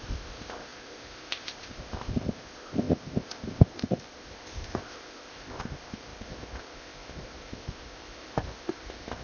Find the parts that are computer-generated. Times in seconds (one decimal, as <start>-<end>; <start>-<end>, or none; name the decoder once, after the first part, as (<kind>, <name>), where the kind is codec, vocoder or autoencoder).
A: 0.0-9.2 (codec, ZipCodec)